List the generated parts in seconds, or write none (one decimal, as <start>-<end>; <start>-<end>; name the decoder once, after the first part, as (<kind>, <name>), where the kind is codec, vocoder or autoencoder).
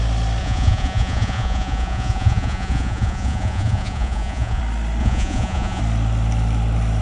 0.4-4.6 (vocoder, Vocos); 5.0-5.8